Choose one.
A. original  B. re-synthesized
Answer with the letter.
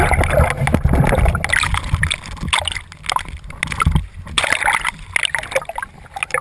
A